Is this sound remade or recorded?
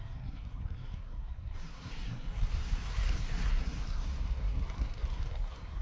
remade